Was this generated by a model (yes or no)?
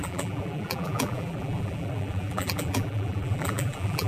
yes